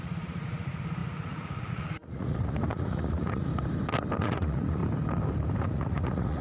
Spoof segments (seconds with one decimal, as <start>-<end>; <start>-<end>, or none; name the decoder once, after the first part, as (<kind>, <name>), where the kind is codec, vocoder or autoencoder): 0.0-3.5 (vocoder, Vocos); 4.2-4.8; 5.6-6.4